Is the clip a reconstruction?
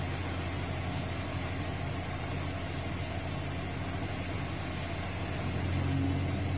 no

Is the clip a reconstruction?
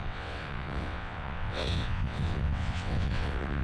yes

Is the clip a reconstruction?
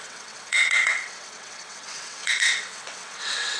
yes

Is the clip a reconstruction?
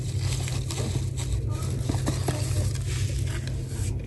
no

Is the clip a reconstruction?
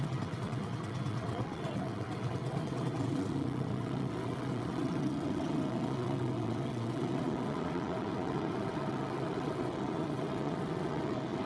yes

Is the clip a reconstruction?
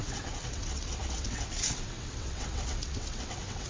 yes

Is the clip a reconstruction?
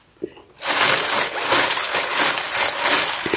no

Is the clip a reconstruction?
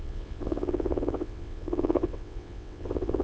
yes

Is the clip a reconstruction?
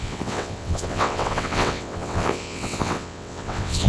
yes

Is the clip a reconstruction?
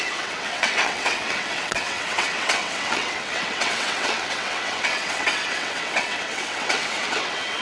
yes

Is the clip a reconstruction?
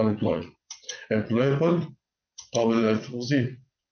yes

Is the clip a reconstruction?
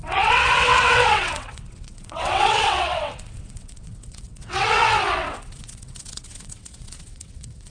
yes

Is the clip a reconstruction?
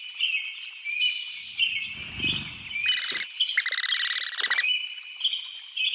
no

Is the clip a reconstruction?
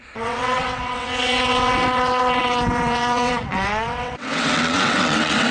yes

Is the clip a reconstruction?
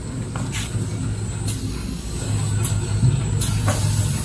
no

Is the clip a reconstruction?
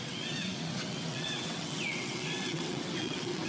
yes